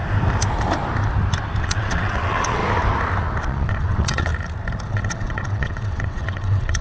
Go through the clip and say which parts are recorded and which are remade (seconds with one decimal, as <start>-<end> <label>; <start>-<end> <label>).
0.0-1.6 recorded; 1.6-2.6 remade; 2.6-3.4 recorded; 3.4-4.3 remade; 4.3-4.9 recorded; 4.9-6.8 remade